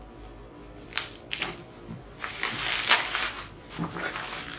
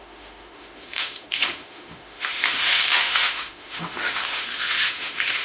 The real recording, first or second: first